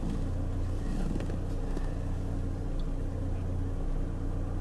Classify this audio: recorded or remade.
recorded